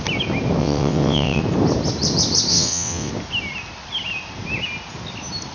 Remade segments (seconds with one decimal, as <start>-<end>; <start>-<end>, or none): 0.6-1.4; 2.5-3.1